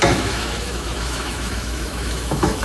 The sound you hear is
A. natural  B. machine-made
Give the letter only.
B